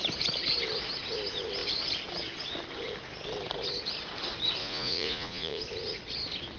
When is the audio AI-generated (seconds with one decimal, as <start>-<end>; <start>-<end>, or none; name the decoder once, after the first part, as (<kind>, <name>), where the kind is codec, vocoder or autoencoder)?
4.6-5.6 (vocoder, Vocos)